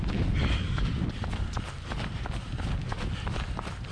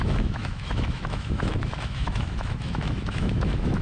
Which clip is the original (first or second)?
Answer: first